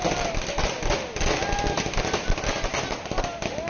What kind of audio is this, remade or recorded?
recorded